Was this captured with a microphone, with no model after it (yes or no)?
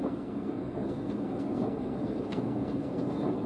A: no